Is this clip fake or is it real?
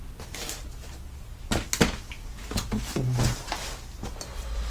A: real